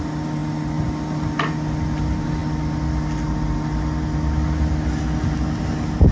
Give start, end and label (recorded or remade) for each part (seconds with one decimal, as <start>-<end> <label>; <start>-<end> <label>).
0.0-6.1 recorded